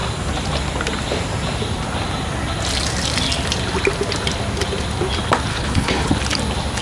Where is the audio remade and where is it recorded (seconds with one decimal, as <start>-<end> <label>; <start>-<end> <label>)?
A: 0.0-5.5 recorded; 5.5-6.1 remade; 6.1-6.8 recorded

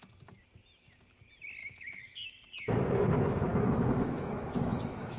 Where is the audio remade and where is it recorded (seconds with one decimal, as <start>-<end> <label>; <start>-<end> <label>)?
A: 0.0-1.6 recorded; 1.6-2.3 remade; 2.3-3.5 recorded; 3.5-5.2 remade

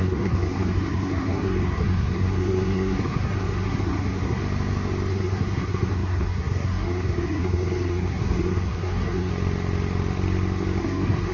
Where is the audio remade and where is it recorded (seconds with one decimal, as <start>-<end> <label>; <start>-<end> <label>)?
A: 0.0-4.4 remade; 4.4-5.1 recorded; 5.1-9.3 remade; 9.3-10.8 recorded; 10.8-11.3 remade